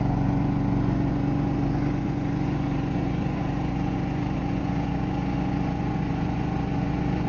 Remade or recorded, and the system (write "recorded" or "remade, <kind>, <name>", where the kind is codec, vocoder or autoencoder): remade, vocoder, Vocos